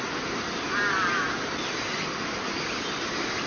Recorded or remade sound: recorded